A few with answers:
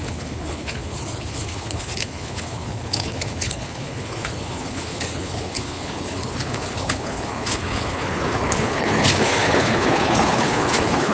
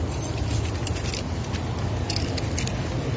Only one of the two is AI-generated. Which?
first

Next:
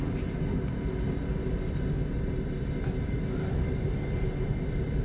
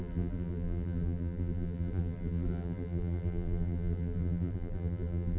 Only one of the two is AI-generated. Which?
second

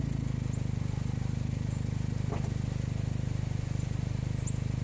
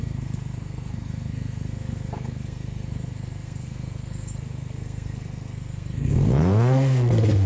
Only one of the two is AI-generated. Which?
second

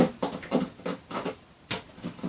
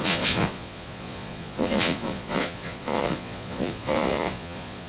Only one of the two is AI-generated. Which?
second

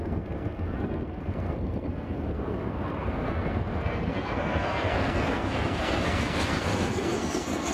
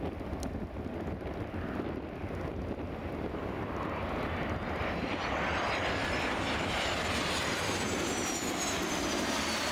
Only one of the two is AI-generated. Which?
first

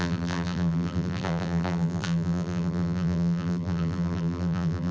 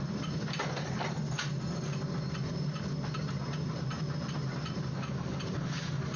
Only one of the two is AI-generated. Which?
first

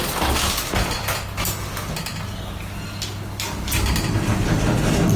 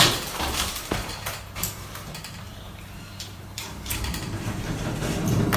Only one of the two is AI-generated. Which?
second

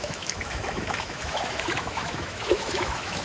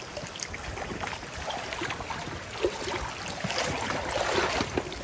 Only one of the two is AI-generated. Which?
first